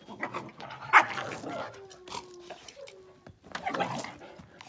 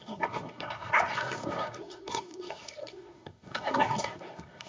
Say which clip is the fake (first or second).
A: second